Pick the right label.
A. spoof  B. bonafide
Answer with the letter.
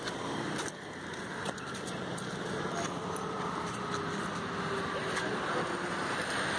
B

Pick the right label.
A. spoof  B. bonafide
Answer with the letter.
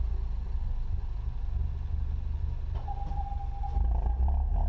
B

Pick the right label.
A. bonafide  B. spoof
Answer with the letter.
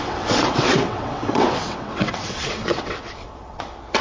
B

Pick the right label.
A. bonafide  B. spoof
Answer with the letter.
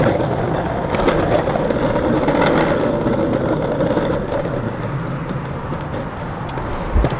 A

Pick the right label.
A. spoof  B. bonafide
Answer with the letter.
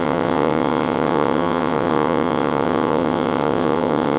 A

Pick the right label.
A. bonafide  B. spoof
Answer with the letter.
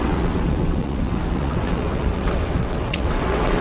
B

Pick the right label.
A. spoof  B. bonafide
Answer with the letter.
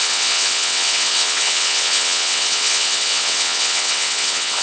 A